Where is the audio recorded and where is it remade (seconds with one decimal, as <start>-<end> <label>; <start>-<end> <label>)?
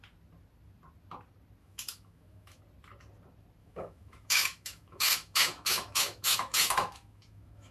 0.0-1.6 recorded; 1.6-2.6 remade; 2.6-3.6 recorded; 3.6-7.7 remade